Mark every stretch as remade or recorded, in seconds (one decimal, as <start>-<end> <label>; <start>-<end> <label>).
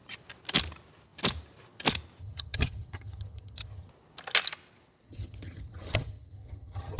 0.0-2.2 recorded; 2.2-3.9 remade; 3.9-5.1 recorded; 5.1-7.0 remade